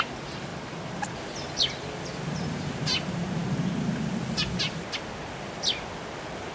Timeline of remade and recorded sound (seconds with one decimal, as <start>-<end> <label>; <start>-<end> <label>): 0.0-6.5 recorded